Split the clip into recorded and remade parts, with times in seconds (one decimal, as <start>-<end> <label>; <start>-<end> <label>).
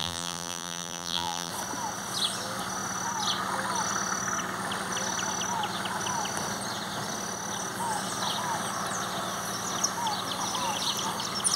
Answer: 0.0-1.5 remade; 1.5-11.6 recorded